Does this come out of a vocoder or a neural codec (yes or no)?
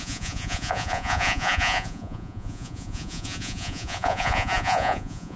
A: yes